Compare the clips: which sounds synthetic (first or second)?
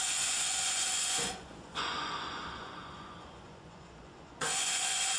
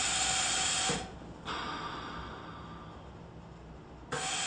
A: first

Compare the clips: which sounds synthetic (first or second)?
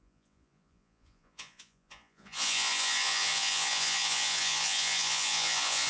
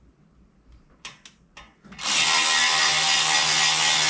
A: first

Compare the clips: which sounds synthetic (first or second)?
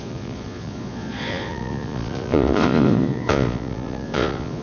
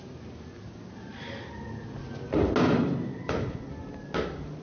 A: first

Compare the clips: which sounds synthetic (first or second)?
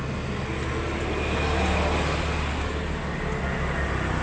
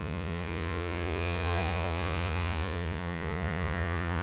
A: second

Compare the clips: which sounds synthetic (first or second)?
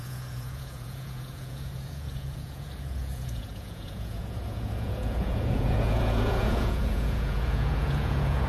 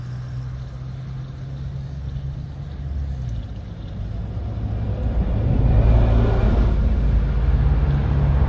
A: first